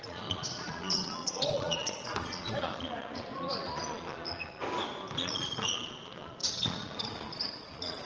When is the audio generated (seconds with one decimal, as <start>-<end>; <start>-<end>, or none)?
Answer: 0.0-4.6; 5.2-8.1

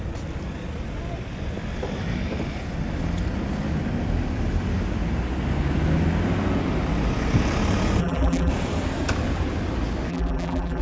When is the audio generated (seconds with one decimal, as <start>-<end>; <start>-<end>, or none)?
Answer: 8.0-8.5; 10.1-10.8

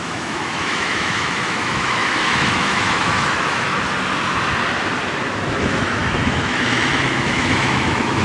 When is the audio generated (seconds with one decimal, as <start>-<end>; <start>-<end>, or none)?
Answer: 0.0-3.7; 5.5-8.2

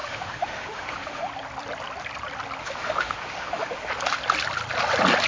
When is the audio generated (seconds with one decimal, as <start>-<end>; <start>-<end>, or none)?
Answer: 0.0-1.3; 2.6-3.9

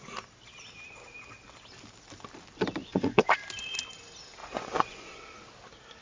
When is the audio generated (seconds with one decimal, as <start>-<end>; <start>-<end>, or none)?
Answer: 2.8-3.3; 4.4-5.2